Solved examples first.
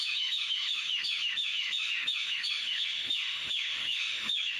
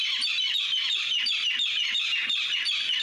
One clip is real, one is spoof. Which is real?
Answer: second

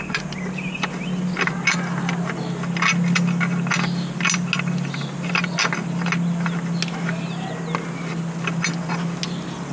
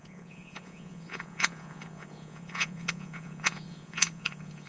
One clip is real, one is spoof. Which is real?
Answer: first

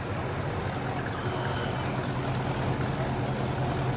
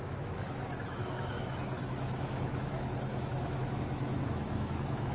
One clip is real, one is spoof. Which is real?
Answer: first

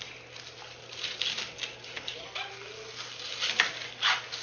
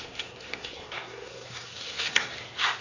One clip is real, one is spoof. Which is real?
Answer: first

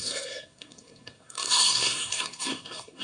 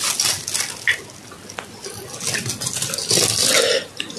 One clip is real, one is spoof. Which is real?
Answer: second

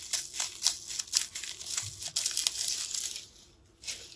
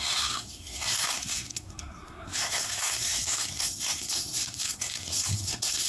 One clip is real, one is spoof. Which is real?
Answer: first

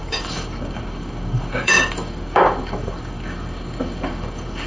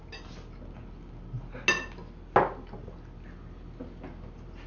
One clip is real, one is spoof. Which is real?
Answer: second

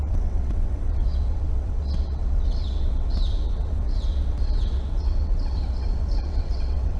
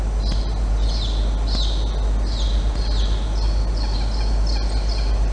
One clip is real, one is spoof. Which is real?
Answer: second